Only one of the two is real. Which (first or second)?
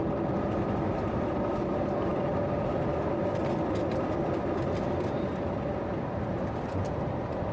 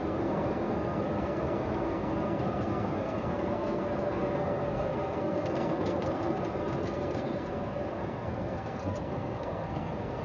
first